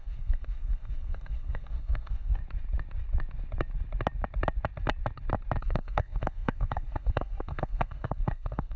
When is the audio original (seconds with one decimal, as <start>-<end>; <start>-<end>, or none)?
2.4-5.6